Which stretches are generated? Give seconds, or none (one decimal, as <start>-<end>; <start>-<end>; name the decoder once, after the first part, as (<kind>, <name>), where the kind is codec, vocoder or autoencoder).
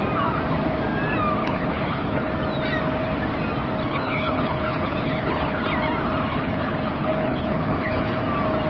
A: 1.4-2.3 (codec, HILCodec); 3.9-5.6; 6.3-8.2